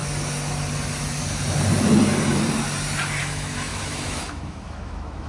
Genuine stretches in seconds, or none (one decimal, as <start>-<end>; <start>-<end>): 0.0-3.2